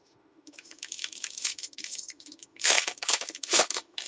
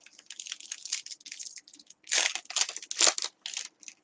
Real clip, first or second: second